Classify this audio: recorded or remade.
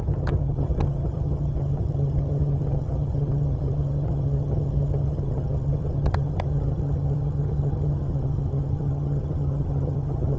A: remade